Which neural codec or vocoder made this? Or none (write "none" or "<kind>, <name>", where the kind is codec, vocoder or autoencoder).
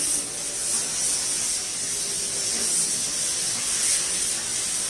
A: none